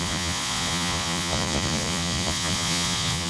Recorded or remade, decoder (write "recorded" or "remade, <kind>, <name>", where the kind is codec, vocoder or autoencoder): remade, vocoder, Vocos